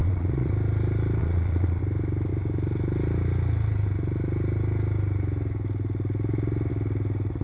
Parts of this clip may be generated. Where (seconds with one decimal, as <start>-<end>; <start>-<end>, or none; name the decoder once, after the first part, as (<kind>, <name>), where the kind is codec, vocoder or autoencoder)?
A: 0.0-0.5 (vocoder, Vocos); 1.2-1.8